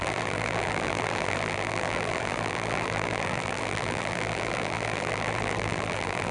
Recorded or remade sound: remade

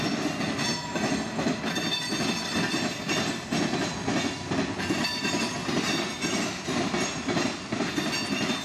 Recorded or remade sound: recorded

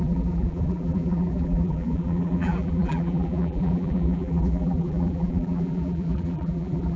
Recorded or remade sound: remade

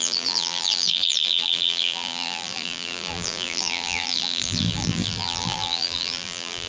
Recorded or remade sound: remade